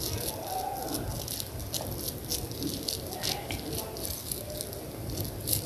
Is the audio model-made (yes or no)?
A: no